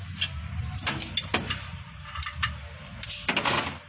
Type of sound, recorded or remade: recorded